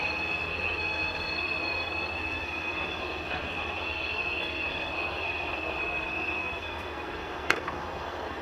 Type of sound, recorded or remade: remade